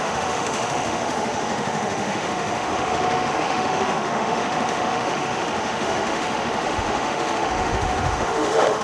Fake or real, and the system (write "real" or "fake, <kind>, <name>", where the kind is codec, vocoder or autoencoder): fake, autoencoder, DAC-VAE